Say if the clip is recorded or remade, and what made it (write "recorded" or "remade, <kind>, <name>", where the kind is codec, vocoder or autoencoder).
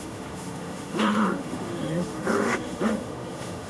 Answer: remade, autoencoder, DAC-VAE